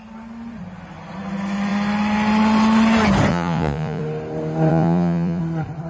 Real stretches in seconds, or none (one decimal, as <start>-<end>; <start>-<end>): 0.0-3.3; 4.0-4.7; 5.4-5.9